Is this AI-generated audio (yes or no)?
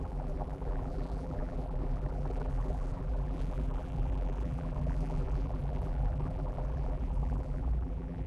yes